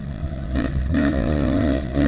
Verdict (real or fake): fake